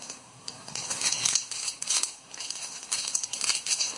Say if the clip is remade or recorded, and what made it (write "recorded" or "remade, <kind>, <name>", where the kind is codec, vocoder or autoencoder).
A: remade, codec, SNAC